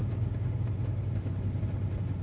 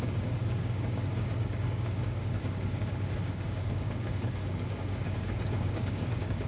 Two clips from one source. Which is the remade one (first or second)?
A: second